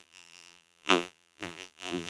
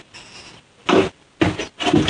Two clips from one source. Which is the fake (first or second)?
first